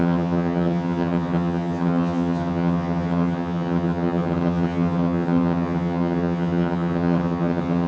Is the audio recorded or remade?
remade